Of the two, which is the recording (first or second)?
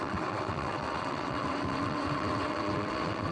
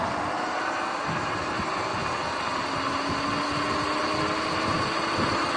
second